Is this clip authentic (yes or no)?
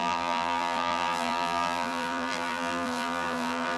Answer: no